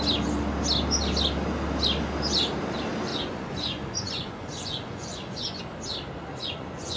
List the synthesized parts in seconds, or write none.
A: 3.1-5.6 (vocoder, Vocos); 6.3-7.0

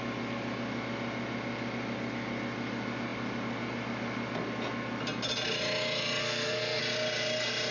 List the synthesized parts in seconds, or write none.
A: 6.2-6.8 (codec, SNAC)

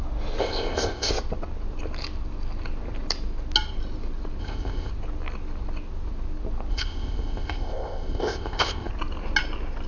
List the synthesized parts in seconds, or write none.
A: 0.4-1.1 (codec, ZipCodec); 4.4-4.9; 6.7-8.9